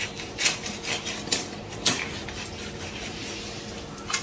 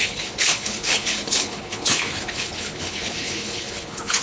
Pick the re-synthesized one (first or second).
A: second